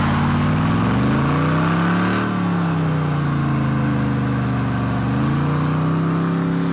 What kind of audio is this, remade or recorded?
recorded